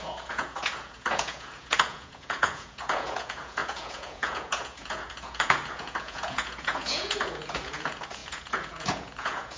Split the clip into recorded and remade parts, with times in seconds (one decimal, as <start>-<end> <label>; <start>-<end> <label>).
0.0-9.6 remade